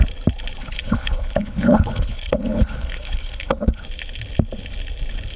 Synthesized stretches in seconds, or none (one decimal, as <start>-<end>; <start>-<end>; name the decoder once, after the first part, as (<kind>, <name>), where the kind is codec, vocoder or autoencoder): 0.6-3.8 (codec, HILCodec)